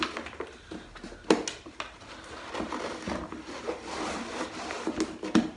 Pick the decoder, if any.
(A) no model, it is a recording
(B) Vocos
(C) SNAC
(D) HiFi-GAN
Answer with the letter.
A